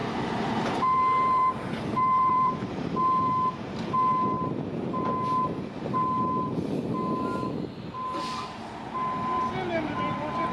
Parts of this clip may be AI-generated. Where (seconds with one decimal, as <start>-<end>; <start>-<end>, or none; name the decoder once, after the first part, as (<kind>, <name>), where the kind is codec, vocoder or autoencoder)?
0.0-3.7 (vocoder, BigVGAN v2)